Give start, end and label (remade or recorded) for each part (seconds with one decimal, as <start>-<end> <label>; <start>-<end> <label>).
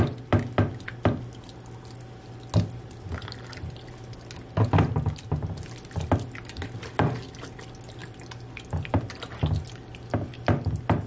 0.0-8.0 recorded; 8.0-8.9 remade; 8.9-11.1 recorded